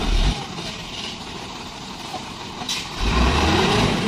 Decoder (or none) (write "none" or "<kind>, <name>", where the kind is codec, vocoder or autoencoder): vocoder, BigVGAN v2